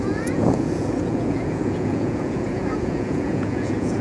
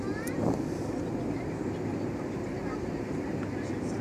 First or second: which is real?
second